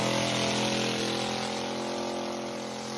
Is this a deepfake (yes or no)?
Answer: no